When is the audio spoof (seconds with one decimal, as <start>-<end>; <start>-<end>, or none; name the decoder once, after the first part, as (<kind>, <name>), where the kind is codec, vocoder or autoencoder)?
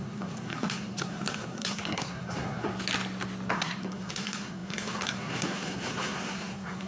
0.0-2.7 (codec, SNAC); 3.5-6.9